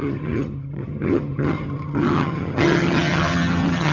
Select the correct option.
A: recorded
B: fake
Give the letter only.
B